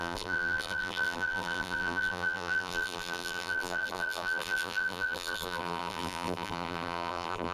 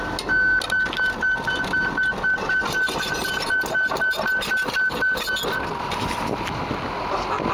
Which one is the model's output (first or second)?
first